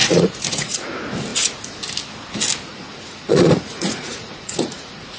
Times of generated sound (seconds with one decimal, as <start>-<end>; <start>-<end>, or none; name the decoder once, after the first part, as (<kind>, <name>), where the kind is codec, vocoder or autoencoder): 0.0-0.9 (vocoder, Vocos); 2.7-5.2